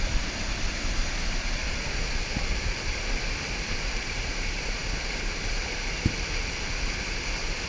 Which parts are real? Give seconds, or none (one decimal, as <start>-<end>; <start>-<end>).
1.6-3.6; 4.8-7.7